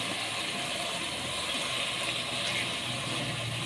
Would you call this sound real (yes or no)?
yes